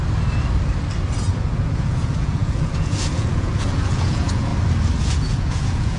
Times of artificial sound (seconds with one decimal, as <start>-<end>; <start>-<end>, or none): 1.3-4.5; 5.0-6.0